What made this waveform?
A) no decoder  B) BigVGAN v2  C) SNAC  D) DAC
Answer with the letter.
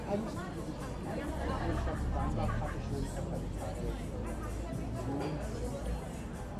A